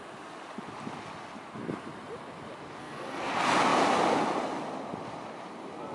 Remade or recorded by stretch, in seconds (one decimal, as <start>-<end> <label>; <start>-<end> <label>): 0.0-2.8 recorded; 2.8-3.3 remade; 3.3-5.9 recorded